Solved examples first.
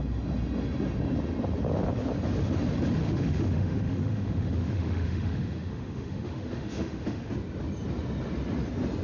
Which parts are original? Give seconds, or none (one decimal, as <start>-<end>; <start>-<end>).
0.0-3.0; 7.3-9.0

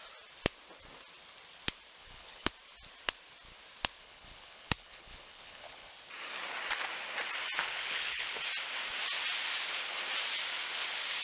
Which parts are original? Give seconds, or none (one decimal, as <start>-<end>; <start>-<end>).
0.0-2.0; 2.5-4.0; 5.9-7.6; 8.4-11.2

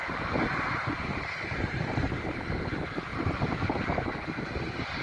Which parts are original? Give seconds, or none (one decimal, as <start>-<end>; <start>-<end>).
2.4-3.1; 4.0-5.0